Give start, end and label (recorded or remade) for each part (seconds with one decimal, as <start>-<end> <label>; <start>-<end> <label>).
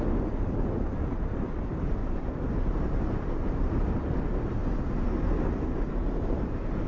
0.0-2.0 recorded; 2.0-3.7 remade; 3.7-6.9 recorded